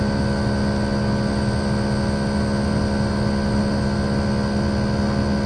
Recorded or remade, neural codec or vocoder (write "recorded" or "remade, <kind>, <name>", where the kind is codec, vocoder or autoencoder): recorded